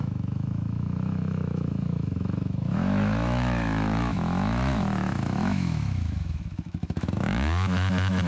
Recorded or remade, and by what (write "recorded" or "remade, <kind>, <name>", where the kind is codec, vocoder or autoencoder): remade, autoencoder, DAC-VAE